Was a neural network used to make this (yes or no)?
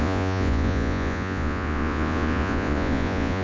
yes